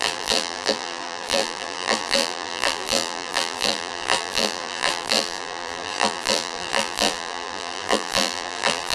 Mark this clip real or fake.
fake